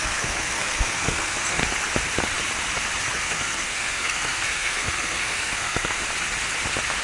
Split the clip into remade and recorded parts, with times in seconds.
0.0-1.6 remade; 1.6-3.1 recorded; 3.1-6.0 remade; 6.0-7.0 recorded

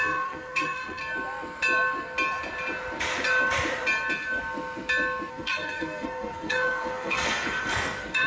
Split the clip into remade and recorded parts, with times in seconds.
0.0-1.0 remade; 1.0-5.3 recorded; 5.3-8.3 remade

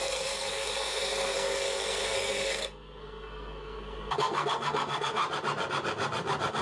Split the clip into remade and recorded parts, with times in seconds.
0.0-5.2 remade; 5.2-6.6 recorded

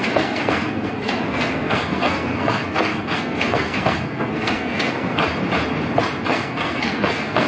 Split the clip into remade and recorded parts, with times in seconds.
0.0-5.2 remade; 5.2-6.3 recorded; 6.3-7.5 remade

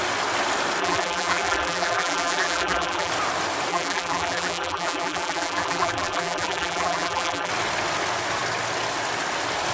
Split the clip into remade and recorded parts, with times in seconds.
0.0-0.8 recorded; 0.8-3.1 remade; 3.1-3.7 recorded; 3.7-7.5 remade; 7.5-9.7 recorded

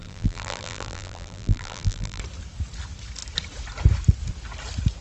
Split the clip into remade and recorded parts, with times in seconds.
0.0-2.2 remade; 2.2-5.0 recorded

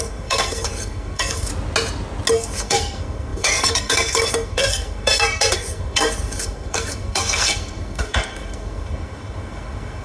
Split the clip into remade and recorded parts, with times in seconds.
0.0-1.5 remade; 1.5-2.3 recorded; 2.3-10.0 remade